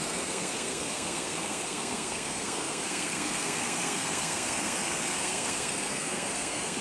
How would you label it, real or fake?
fake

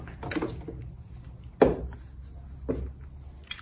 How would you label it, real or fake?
real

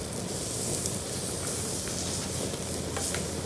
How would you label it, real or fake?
real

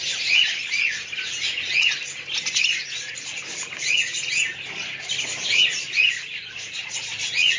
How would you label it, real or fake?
real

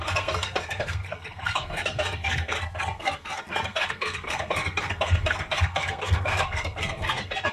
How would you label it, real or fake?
fake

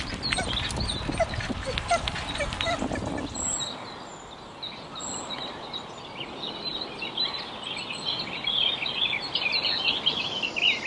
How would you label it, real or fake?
real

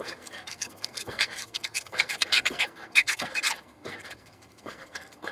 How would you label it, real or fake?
fake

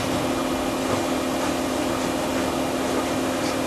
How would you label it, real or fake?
real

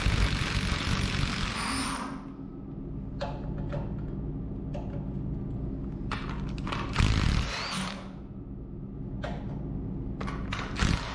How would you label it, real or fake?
real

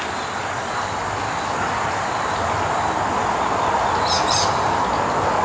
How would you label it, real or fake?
real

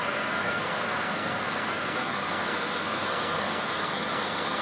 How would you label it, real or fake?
fake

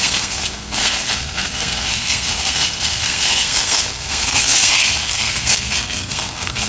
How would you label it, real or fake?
fake